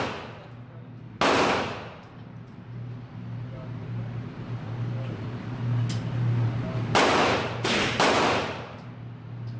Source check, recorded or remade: recorded